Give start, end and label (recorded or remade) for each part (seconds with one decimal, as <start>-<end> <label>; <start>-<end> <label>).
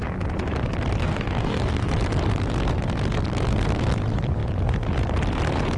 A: 0.0-1.0 recorded; 1.0-1.9 remade; 1.9-5.8 recorded